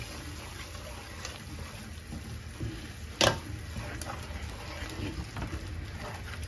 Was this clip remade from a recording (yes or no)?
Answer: no